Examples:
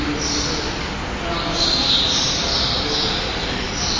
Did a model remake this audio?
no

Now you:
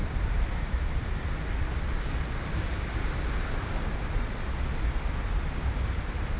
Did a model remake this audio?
yes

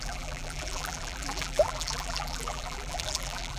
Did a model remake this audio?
yes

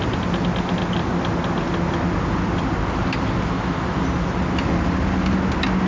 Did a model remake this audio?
no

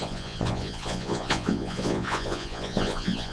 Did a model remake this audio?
yes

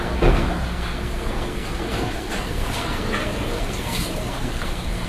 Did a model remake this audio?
yes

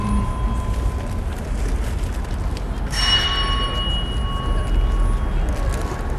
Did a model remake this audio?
no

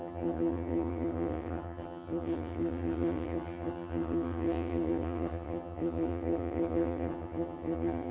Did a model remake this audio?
yes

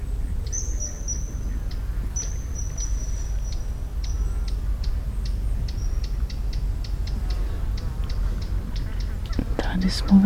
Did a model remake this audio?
no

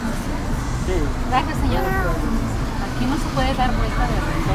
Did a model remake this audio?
no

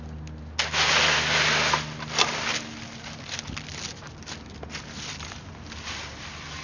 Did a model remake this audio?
no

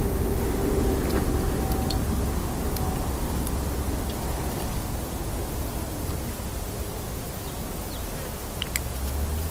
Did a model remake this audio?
no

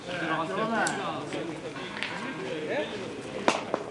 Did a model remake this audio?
no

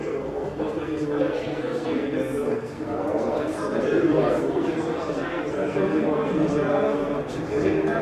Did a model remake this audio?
yes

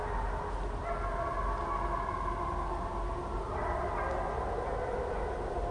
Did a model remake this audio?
no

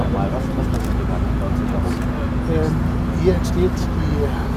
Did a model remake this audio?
no